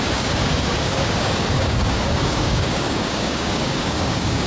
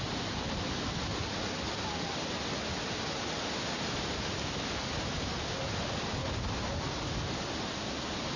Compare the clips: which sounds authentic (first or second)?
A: second